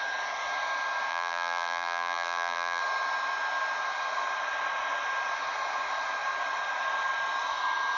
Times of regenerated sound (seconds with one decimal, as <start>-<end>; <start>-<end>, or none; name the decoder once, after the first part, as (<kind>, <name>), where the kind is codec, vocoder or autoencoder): 1.1-2.8 (vocoder, BigVGAN v2)